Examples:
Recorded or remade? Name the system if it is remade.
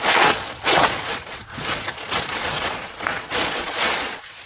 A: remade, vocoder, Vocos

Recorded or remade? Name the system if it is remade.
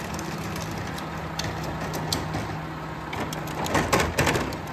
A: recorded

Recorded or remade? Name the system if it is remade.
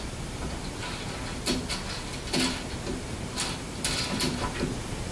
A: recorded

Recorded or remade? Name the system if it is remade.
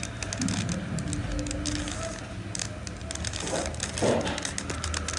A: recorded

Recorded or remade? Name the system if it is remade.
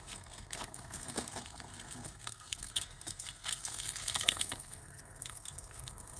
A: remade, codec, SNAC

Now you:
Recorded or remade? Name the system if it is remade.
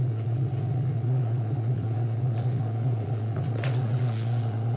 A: remade, vocoder, Vocos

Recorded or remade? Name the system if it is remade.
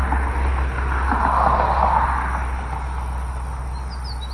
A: recorded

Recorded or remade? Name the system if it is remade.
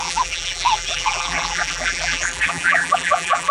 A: remade, vocoder, BigVGAN v2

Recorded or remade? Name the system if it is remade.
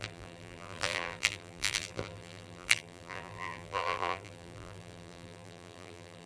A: remade, vocoder, BigVGAN v2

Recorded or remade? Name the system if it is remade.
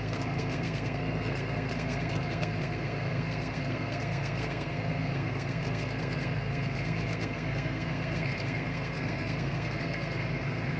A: remade, codec, SNAC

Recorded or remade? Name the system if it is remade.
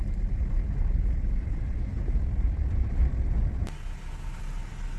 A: recorded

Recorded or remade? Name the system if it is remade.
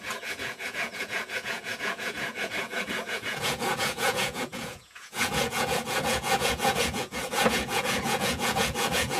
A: remade, vocoder, Vocos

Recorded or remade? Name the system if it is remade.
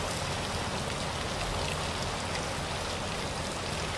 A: recorded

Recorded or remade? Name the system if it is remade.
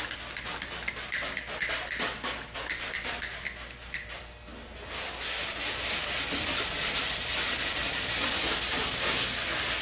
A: recorded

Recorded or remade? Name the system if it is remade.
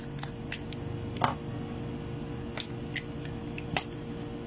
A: recorded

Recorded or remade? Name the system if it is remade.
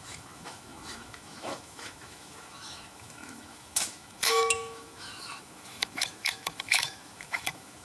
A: remade, autoencoder, DAC-VAE